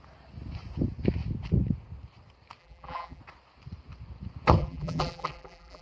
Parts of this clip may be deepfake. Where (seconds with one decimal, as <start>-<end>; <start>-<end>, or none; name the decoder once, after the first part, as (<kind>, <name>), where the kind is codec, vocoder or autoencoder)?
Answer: 2.6-3.2 (vocoder, BigVGAN v2); 4.6-5.8